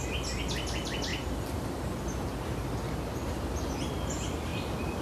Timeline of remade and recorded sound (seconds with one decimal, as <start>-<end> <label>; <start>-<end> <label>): 0.0-5.0 recorded